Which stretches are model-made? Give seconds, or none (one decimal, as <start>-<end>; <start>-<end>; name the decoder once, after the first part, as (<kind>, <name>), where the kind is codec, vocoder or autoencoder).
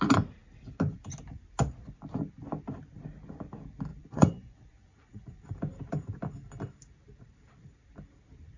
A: 3.9-5.6 (vocoder, Vocos)